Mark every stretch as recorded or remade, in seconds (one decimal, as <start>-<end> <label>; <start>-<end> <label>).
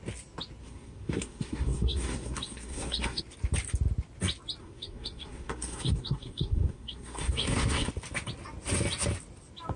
0.0-0.6 recorded; 0.6-3.2 remade; 3.2-4.6 recorded; 4.6-7.9 remade; 7.9-9.8 recorded